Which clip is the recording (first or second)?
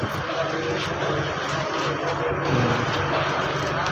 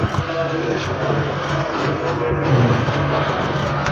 first